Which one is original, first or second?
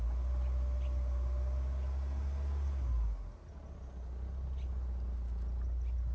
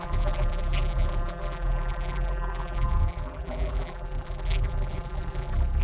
first